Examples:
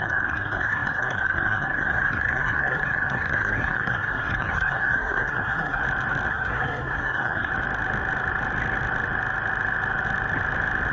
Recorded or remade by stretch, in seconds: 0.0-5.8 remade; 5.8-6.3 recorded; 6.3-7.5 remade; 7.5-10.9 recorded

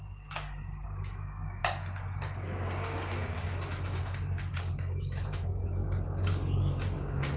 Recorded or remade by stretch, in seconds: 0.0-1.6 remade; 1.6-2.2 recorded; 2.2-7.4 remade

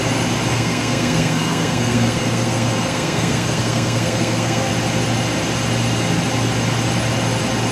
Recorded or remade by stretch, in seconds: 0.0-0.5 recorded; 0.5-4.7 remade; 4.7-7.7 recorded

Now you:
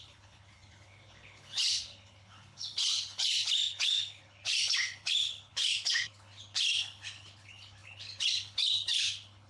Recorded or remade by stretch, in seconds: 0.0-9.5 remade

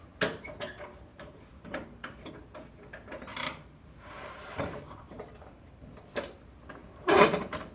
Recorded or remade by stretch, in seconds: 0.0-1.1 recorded; 1.1-2.3 remade; 2.3-3.3 recorded; 3.3-5.9 remade; 5.9-6.8 recorded; 6.8-7.7 remade

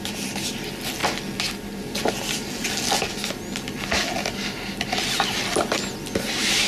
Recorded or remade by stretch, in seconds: 0.0-6.7 recorded

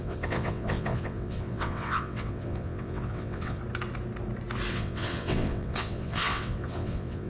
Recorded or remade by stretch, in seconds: 0.0-3.6 remade; 3.6-4.7 recorded; 4.7-7.3 remade